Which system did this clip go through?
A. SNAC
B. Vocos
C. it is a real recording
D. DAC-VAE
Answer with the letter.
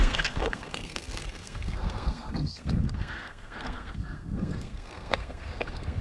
A